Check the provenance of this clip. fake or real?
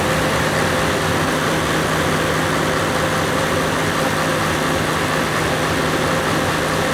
real